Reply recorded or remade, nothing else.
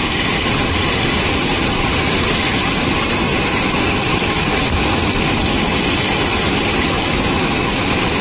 recorded